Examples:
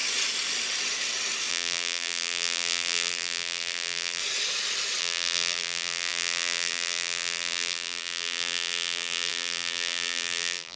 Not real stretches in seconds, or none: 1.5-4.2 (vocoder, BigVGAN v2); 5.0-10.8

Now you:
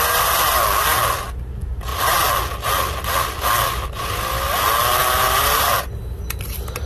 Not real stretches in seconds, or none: 5.0-5.9 (vocoder, BigVGAN v2)

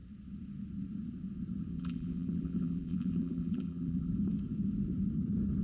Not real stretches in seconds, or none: 1.7-4.1 (vocoder, BigVGAN v2)

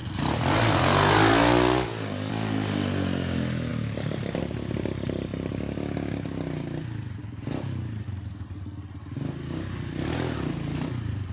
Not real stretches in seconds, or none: none

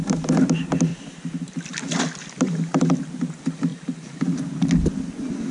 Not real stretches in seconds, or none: 0.9-1.6 (vocoder, BigVGAN v2); 3.7-4.2

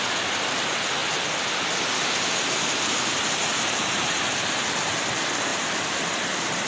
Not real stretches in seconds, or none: 0.0-1.0 (vocoder, BigVGAN v2); 4.4-6.7

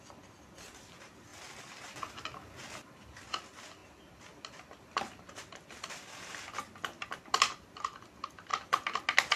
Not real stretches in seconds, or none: none

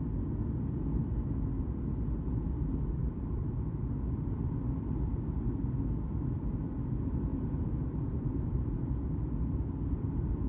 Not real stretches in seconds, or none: 3.0-3.6 (vocoder, BigVGAN v2); 7.3-9.2